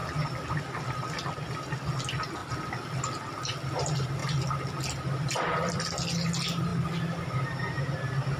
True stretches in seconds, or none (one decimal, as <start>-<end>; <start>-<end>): 0.0-2.4; 3.4-4.2; 5.8-6.7; 7.6-8.4